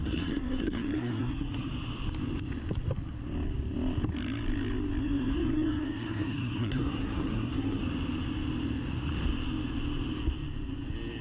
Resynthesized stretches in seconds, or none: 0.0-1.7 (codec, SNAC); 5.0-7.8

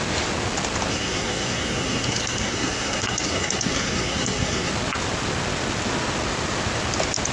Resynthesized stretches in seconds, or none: 0.9-4.7 (codec, SNAC)